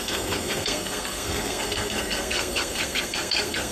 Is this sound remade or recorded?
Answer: remade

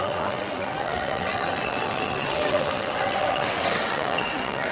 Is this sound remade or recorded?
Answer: remade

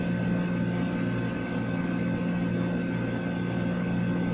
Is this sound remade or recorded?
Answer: recorded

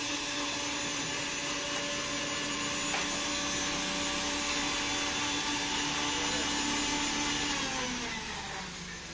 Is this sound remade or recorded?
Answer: recorded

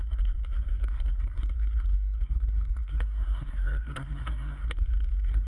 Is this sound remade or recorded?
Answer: remade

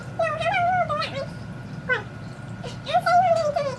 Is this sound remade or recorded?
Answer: recorded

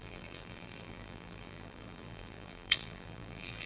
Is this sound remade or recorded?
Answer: remade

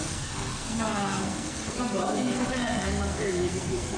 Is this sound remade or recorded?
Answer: remade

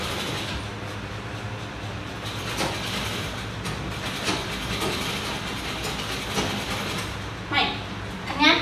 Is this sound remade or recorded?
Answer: recorded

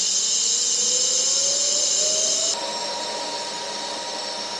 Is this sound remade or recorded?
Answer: recorded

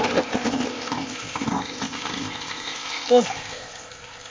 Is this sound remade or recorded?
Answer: remade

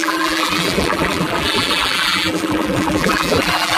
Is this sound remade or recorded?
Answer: remade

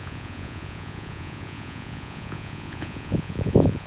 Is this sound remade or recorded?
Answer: remade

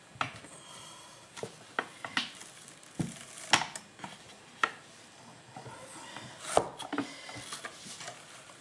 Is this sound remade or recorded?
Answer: recorded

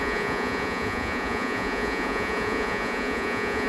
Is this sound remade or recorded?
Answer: remade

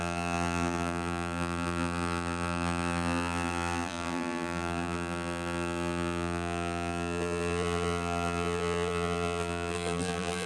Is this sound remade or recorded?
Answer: remade